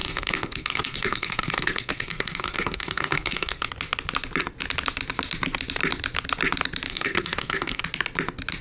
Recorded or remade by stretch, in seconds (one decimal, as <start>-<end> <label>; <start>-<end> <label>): 0.0-3.7 remade; 3.7-6.9 recorded; 6.9-7.8 remade; 7.8-8.6 recorded